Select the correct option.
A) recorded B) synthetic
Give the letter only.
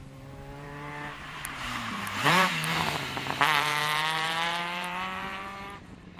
B